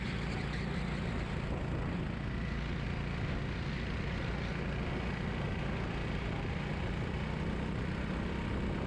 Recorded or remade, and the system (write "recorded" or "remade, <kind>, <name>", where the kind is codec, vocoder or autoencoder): recorded